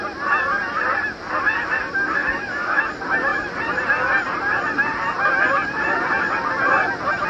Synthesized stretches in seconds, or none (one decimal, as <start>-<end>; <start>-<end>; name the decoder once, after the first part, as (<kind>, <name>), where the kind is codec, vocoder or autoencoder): 2.2-2.9 (autoencoder, DAC-VAE)